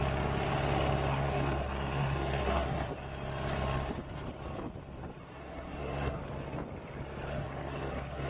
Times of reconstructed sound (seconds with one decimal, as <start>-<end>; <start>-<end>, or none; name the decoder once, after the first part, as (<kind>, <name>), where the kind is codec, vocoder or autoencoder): 1.1-3.0 (codec, SNAC); 5.2-6.2; 7.3-8.3